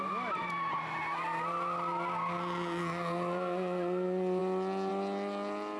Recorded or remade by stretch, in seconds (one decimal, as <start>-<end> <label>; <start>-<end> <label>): 0.0-5.8 recorded